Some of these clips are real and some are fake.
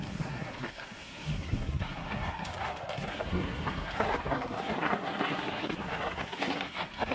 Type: fake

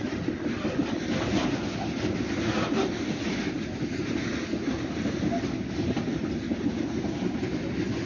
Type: real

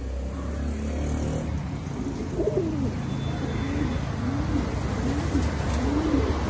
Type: real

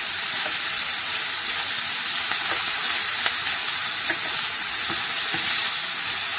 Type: real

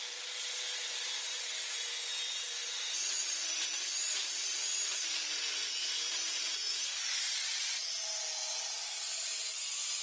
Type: real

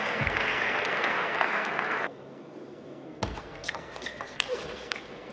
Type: fake